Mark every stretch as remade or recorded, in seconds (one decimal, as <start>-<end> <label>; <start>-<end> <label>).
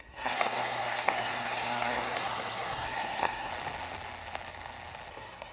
0.0-3.5 remade; 3.5-5.1 recorded; 5.1-5.5 remade